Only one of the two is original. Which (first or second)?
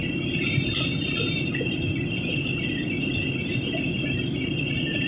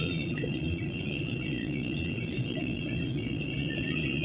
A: first